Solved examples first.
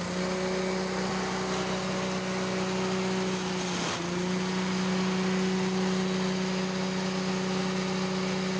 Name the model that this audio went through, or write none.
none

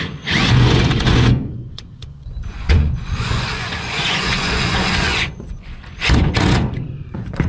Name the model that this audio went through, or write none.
vocoder, Vocos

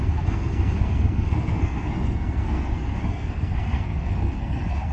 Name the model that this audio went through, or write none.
codec, SNAC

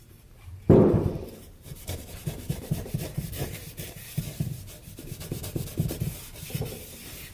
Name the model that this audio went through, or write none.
vocoder, BigVGAN v2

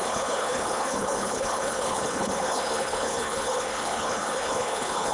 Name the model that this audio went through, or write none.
codec, HILCodec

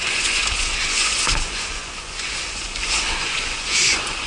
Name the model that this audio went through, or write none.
vocoder, Vocos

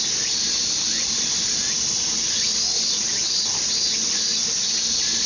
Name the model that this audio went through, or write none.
none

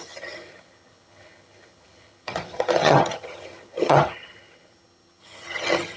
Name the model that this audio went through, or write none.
vocoder, HiFi-GAN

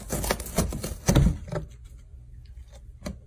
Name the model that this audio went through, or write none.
none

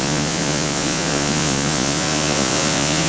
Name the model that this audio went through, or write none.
vocoder, Vocos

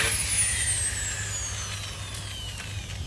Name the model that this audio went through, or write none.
none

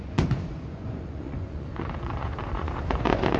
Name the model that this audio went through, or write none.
vocoder, Vocos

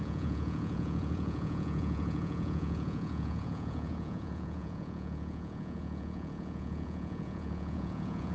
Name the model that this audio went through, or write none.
vocoder, Vocos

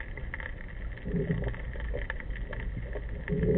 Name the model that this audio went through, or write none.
none